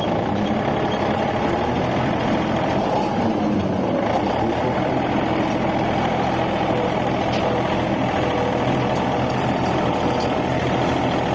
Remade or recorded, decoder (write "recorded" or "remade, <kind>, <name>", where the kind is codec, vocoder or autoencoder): recorded